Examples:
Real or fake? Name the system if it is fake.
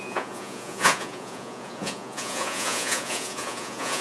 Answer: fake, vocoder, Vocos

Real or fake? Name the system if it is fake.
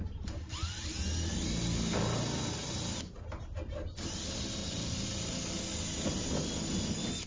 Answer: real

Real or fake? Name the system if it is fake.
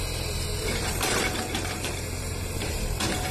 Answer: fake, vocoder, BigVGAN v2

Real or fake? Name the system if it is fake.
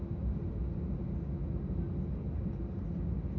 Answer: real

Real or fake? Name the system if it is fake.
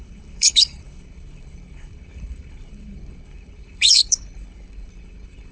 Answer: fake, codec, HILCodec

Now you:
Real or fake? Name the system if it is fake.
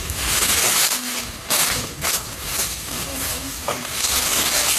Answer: fake, codec, DAC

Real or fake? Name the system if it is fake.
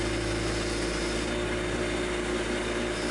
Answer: real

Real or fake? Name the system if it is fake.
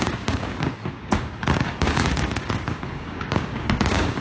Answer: fake, codec, DAC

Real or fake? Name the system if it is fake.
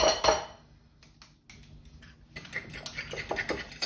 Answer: real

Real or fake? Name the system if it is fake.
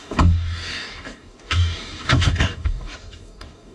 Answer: fake, codec, DAC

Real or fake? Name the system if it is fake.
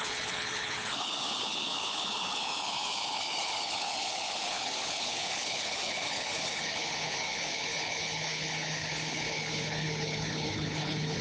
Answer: fake, codec, HILCodec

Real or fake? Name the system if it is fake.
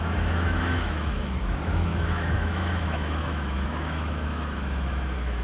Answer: fake, autoencoder, DAC-VAE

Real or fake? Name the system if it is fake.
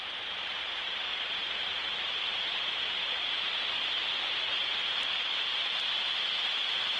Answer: fake, vocoder, BigVGAN v2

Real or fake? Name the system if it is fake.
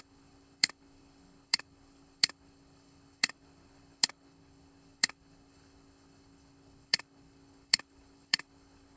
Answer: fake, codec, HILCodec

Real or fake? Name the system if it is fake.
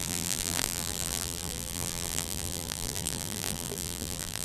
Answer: fake, vocoder, BigVGAN v2